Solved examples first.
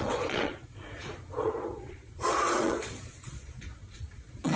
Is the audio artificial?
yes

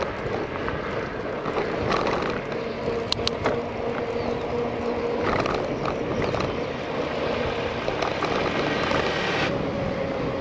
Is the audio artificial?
no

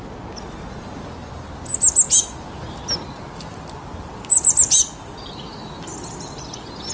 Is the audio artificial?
no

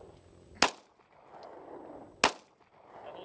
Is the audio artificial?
no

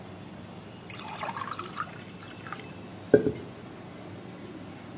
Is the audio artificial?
no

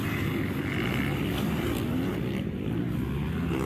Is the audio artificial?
no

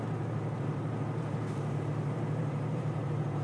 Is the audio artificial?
yes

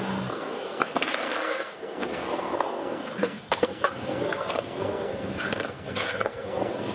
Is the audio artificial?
yes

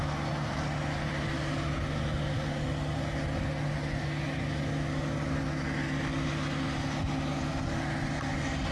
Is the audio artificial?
no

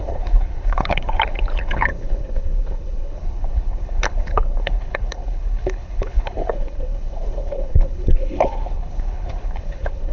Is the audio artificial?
yes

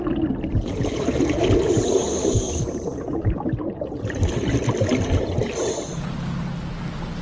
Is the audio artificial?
no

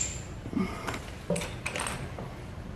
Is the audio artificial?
no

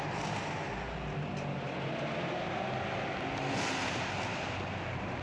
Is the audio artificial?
no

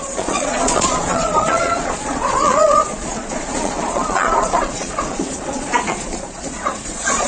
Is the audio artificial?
yes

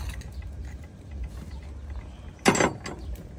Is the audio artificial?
no